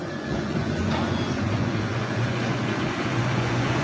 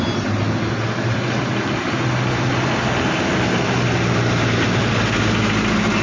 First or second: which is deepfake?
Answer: first